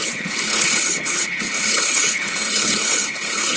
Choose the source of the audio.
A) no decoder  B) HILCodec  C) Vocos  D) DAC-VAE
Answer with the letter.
B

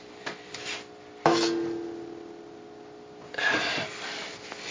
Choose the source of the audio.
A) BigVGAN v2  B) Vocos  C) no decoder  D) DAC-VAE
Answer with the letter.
C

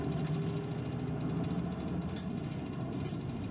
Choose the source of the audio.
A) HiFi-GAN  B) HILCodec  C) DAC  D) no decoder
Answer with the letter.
D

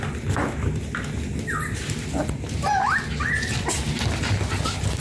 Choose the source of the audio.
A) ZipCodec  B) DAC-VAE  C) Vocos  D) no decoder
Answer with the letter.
D